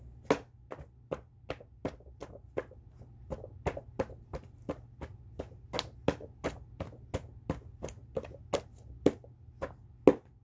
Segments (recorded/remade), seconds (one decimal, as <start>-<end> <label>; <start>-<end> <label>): 0.0-10.4 recorded

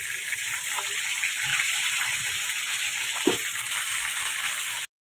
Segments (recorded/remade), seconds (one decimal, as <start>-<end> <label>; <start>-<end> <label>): 0.0-1.5 recorded; 1.5-2.0 remade; 2.0-5.0 recorded

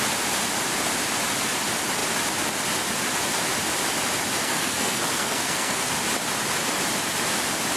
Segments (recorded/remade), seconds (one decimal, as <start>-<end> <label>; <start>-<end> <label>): 0.0-4.4 recorded; 4.4-5.9 remade; 5.9-7.8 recorded

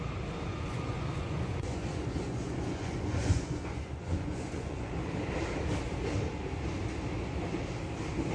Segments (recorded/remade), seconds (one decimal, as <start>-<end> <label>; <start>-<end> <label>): 0.0-0.5 recorded; 0.5-4.9 remade; 4.9-8.3 recorded

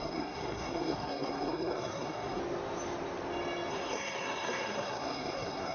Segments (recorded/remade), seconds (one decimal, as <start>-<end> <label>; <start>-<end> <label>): 0.0-2.4 remade; 2.4-3.7 recorded; 3.7-5.7 remade

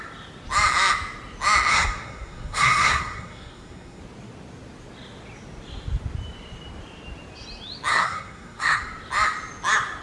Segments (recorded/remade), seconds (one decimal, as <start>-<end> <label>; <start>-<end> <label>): 0.0-1.7 recorded; 1.7-4.0 remade; 4.0-7.9 recorded; 7.9-8.8 remade; 8.8-10.0 recorded

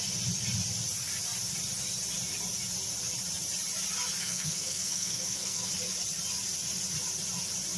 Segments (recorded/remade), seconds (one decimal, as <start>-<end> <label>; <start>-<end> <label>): 0.0-4.2 recorded; 4.2-5.7 remade; 5.7-7.8 recorded

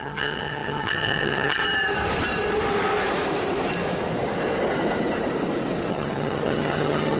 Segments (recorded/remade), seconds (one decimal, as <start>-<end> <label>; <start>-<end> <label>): 0.0-1.6 remade; 1.6-5.9 recorded; 5.9-7.2 remade